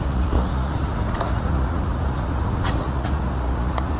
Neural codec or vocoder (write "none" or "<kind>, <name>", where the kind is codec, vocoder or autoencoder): vocoder, Vocos